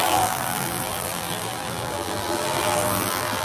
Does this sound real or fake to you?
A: fake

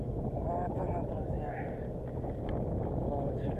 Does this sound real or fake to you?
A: real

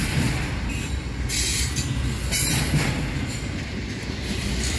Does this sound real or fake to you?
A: real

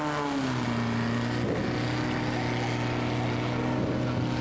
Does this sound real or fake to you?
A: real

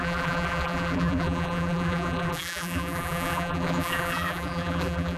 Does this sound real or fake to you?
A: fake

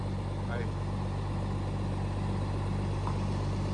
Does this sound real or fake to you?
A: real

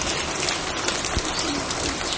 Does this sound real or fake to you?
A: real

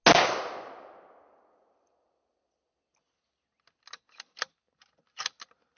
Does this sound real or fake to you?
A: real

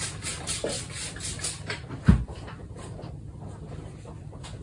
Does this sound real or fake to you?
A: real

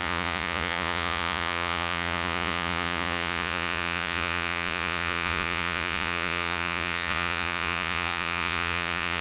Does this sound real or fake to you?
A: fake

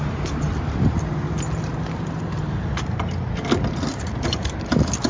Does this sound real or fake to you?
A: real